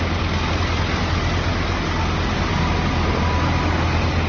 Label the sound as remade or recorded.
recorded